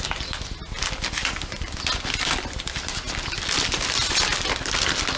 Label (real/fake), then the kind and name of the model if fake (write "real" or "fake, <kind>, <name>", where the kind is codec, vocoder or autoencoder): real